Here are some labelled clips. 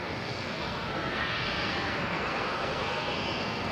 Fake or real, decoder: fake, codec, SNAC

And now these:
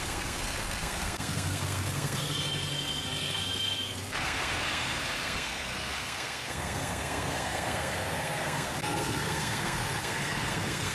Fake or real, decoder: fake, codec, SNAC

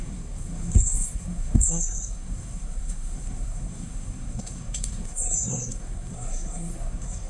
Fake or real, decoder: fake, codec, SNAC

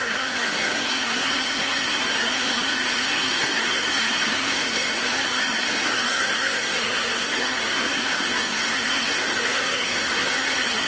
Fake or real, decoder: fake, codec, SNAC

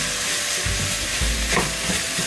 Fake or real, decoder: real